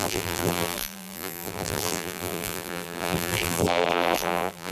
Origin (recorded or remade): remade